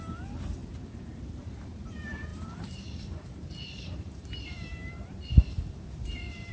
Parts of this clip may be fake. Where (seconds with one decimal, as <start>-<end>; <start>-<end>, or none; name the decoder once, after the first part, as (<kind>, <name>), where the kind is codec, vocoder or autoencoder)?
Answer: 0.0-6.5 (vocoder, BigVGAN v2)